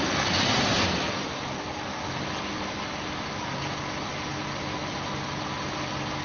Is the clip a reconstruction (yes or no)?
no